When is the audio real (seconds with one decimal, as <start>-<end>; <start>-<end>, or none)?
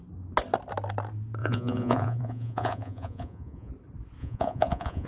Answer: 0.0-1.4; 3.7-4.2